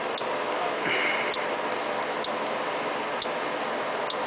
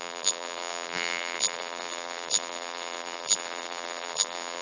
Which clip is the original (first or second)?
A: first